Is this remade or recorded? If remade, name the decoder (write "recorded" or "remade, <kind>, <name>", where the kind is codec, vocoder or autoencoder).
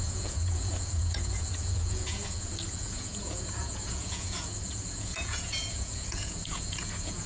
remade, vocoder, Vocos